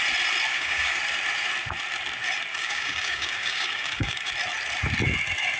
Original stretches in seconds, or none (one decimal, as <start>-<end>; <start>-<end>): 0.0-0.5; 1.0-2.5; 4.3-5.6

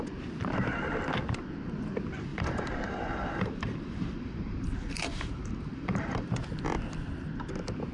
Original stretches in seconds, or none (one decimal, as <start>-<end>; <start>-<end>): 0.0-2.3; 6.3-7.9

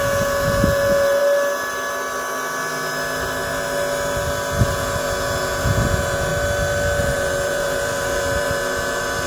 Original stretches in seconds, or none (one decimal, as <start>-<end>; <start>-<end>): 1.2-4.6; 6.3-7.0

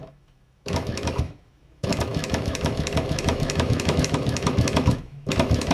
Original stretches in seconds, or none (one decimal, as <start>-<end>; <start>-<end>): none

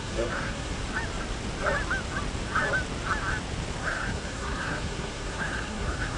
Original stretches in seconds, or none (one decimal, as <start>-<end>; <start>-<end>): 0.8-3.8